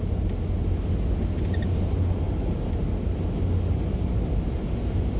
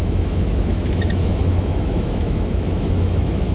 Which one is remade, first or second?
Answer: second